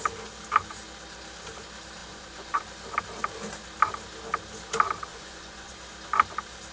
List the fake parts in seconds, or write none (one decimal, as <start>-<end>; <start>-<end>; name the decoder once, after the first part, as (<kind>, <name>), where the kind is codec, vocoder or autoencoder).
2.0-2.6 (vocoder, Vocos); 5.1-5.7